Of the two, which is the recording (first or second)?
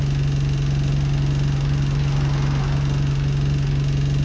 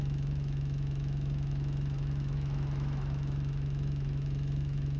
first